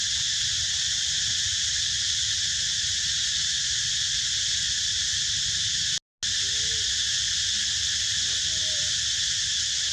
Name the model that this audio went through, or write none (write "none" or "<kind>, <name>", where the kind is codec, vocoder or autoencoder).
none